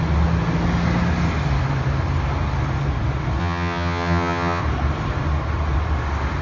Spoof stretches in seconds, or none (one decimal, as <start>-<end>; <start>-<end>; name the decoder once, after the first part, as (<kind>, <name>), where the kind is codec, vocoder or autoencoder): 3.4-4.6 (vocoder, HiFi-GAN)